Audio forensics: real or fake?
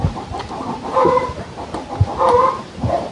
fake